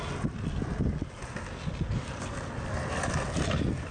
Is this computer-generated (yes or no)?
no